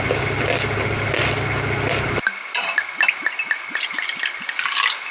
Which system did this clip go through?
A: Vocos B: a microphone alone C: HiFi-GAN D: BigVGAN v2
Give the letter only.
B